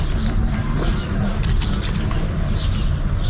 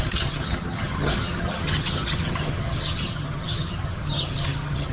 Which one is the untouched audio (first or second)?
first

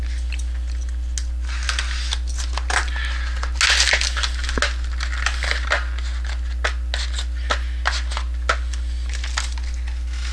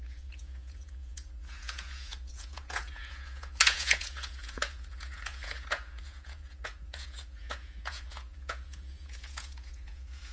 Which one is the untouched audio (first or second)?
first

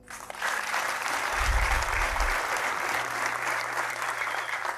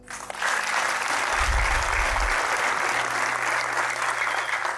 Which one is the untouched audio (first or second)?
second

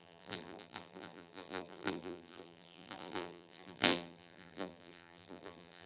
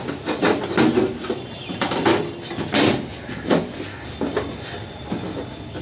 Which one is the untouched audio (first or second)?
second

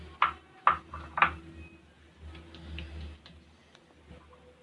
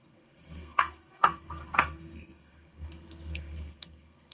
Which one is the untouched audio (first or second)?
first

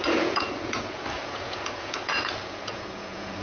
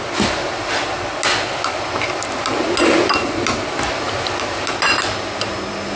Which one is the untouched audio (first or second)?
second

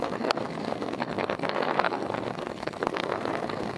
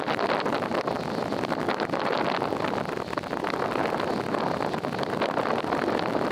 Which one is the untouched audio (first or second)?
second